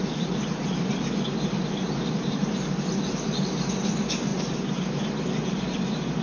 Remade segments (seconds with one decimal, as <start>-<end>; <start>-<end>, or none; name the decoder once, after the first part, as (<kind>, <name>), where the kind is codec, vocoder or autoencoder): 0.0-0.9 (vocoder, BigVGAN v2); 1.6-3.4; 4.3-4.9